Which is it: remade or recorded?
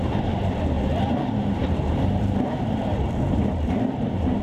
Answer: remade